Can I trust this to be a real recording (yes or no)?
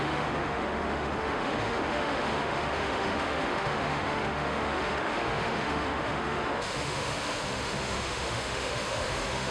no